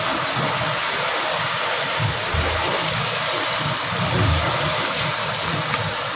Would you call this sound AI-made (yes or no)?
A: no